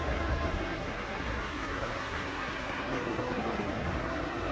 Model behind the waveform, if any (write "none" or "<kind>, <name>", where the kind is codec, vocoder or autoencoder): codec, SNAC